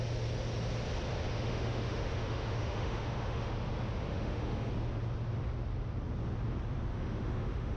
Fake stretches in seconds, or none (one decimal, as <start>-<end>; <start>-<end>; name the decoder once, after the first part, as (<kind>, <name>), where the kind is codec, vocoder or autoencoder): 1.3-3.5 (autoencoder, DAC-VAE); 4.1-4.7; 6.9-7.8